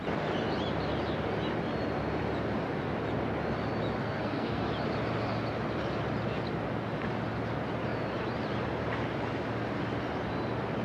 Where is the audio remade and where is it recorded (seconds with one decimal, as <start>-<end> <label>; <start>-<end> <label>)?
0.0-4.0 recorded; 4.0-4.7 remade; 4.7-10.8 recorded